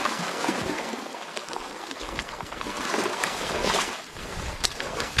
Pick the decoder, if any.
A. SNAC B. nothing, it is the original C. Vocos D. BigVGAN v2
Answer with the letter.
A